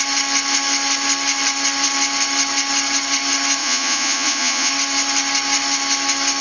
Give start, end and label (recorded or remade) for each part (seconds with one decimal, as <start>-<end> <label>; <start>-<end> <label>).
0.0-3.6 recorded; 3.6-4.7 remade; 4.7-6.4 recorded